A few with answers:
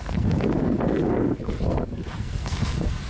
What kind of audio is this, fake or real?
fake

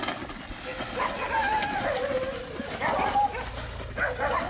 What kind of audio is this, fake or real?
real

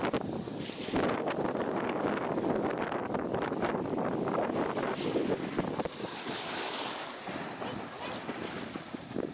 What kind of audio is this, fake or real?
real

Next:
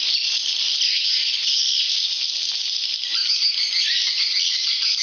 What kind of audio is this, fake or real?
real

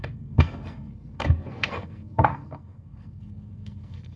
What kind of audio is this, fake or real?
fake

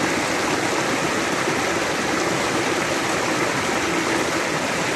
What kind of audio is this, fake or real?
real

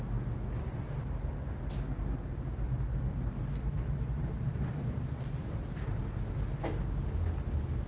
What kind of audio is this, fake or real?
real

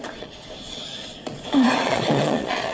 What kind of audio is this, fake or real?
fake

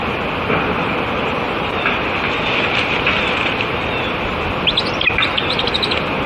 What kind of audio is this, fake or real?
real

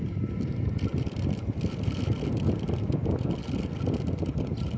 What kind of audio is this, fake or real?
real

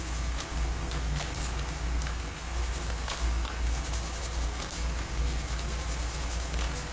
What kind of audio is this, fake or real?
fake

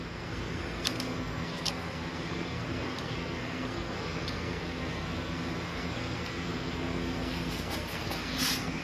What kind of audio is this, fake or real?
fake